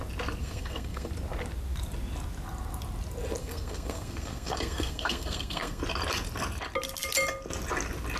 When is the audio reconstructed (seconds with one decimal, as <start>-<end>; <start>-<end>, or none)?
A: 0.4-1.1; 3.4-5.8